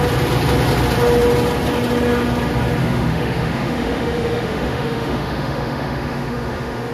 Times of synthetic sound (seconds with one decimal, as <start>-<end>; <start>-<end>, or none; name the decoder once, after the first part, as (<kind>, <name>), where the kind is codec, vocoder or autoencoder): 2.8-6.9 (autoencoder, DAC-VAE)